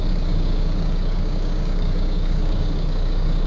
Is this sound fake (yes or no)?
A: yes